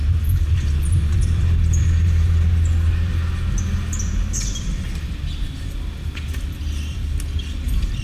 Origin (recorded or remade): recorded